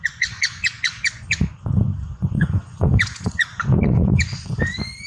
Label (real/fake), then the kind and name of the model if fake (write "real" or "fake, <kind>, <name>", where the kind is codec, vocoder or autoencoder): fake, vocoder, Vocos